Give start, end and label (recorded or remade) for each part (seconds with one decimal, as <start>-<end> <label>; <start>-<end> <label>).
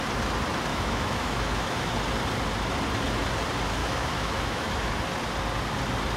0.0-0.7 recorded; 0.7-1.9 remade; 1.9-3.8 recorded; 3.8-4.9 remade; 4.9-6.2 recorded